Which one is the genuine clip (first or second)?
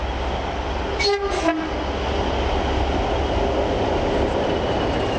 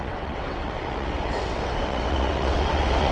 first